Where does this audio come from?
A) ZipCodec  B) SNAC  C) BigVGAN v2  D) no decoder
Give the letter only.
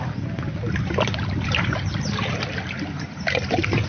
D